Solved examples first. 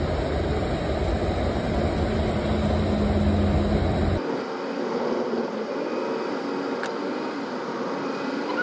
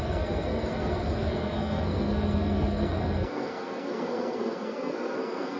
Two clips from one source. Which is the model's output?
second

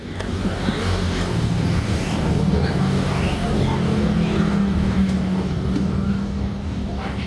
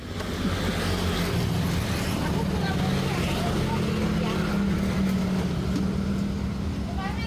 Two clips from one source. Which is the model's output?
first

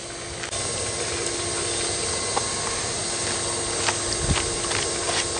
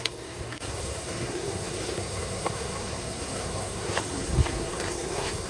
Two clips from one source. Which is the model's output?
second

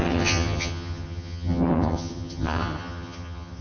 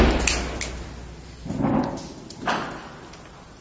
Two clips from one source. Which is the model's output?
first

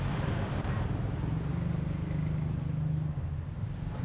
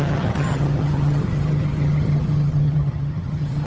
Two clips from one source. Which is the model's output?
second